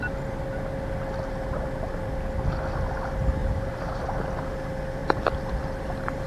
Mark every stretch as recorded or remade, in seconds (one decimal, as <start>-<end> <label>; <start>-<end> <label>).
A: 0.0-3.4 recorded; 3.4-4.0 remade; 4.0-6.3 recorded